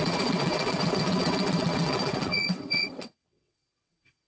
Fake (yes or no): yes